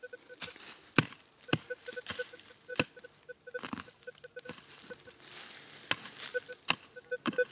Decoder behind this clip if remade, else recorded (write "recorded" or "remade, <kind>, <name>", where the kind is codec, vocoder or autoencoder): recorded